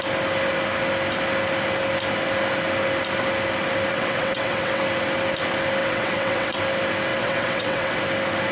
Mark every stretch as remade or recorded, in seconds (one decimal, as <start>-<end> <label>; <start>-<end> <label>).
0.0-3.9 recorded; 3.9-4.8 remade; 4.8-5.8 recorded; 5.8-6.6 remade; 6.6-7.1 recorded; 7.1-8.0 remade; 8.0-8.5 recorded